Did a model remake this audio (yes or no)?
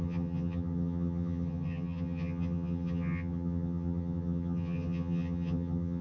yes